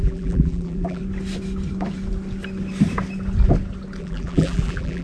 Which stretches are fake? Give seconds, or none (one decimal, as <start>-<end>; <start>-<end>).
0.0-1.0; 4.0-5.0